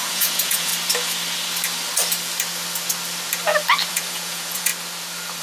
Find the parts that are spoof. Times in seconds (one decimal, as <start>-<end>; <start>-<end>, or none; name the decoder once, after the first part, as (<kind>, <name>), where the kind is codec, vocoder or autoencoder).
0.0-0.7 (vocoder, Vocos); 3.9-4.7